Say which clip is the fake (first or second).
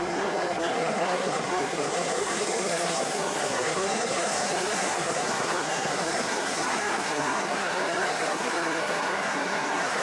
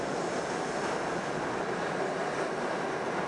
first